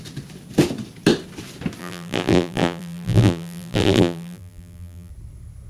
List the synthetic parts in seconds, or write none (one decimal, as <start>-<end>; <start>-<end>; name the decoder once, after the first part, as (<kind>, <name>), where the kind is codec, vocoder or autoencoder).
1.8-5.1 (vocoder, BigVGAN v2)